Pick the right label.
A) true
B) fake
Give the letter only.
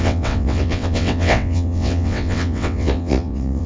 B